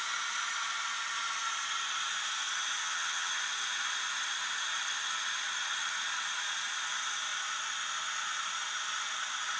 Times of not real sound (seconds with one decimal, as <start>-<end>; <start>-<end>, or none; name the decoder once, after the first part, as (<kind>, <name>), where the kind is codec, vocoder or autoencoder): 2.8-3.3 (vocoder, HiFi-GAN)